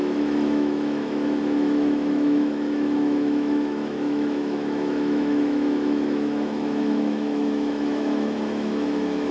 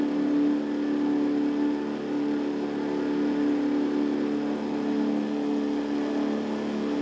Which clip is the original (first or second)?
second